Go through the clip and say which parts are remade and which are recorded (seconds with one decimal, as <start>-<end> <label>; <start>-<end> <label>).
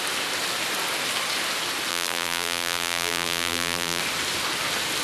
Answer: 0.0-1.9 recorded; 1.9-4.0 remade; 4.0-5.0 recorded